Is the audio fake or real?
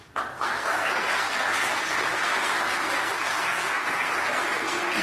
fake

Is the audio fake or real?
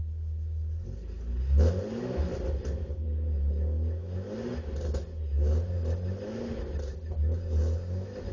real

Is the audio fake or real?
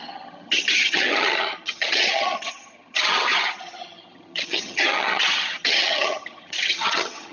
fake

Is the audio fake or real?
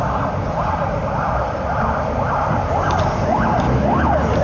real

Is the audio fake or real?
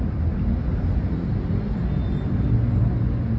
real